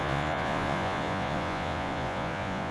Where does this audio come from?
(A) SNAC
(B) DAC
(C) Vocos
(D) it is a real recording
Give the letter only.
C